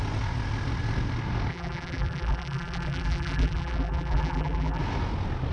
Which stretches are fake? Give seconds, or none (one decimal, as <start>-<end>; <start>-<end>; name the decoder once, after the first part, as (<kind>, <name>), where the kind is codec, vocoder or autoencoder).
1.5-4.8 (vocoder, BigVGAN v2)